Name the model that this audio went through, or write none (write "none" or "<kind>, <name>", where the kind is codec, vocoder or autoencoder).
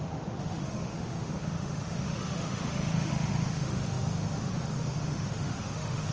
autoencoder, DAC-VAE